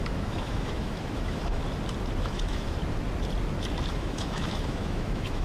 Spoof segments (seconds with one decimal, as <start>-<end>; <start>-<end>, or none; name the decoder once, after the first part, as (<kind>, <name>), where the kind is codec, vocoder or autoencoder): 0.0-1.6 (autoencoder, DAC-VAE); 2.2-2.8; 3.9-5.4